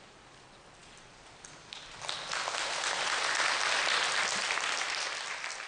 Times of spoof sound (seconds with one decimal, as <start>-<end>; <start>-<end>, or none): none